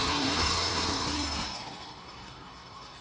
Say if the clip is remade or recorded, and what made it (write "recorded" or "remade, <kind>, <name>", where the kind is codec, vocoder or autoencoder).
remade, codec, SNAC